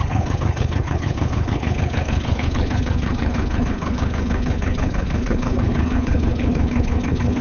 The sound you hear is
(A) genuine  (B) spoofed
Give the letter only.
B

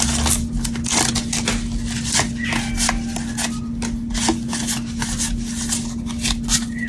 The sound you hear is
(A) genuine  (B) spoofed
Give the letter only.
A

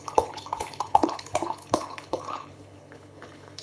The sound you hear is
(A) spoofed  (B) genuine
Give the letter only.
A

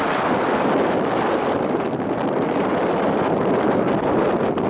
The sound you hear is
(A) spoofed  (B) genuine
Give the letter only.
B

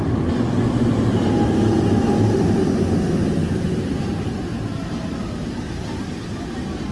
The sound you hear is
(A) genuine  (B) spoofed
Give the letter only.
A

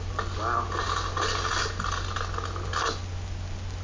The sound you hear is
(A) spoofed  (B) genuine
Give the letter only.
B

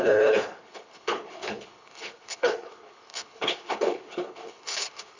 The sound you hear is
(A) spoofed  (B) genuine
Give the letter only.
A